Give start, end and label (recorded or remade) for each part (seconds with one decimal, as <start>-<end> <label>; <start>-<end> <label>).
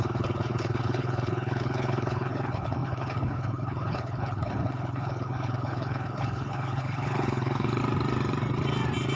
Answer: 0.0-7.8 remade; 7.8-9.2 recorded